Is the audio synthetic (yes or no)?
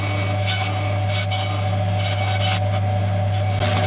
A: no